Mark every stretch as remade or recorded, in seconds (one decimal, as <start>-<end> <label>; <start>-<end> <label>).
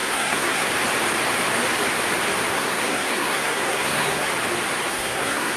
0.0-0.7 remade; 0.7-2.5 recorded; 2.5-4.3 remade; 4.3-4.9 recorded; 4.9-5.6 remade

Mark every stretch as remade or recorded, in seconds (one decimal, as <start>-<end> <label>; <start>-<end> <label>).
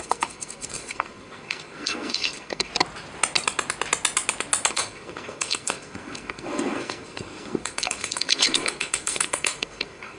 0.0-2.7 remade; 2.7-4.7 recorded; 4.7-10.2 remade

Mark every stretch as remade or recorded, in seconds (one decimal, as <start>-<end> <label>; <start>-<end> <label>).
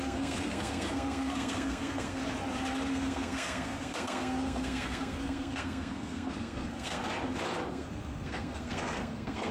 0.0-2.2 remade; 2.2-2.9 recorded; 2.9-7.0 remade; 7.0-7.7 recorded; 7.7-9.5 remade